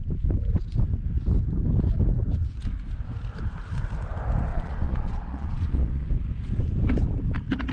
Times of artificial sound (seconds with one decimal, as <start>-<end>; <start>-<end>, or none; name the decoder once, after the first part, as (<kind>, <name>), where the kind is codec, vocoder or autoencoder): 4.5-6.1 (vocoder, Vocos)